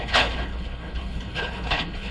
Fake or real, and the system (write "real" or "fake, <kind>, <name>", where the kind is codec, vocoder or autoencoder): fake, codec, HILCodec